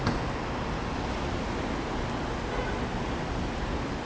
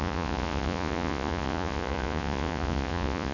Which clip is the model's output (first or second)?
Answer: second